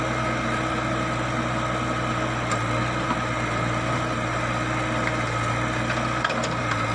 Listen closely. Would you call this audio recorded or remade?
recorded